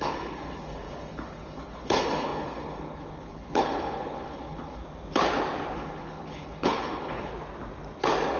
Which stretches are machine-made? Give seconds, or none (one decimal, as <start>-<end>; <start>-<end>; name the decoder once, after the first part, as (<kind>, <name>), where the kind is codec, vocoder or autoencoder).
0.0-4.8 (codec, HILCodec); 5.7-7.3